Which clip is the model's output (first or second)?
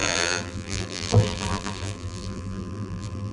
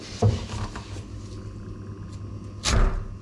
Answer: first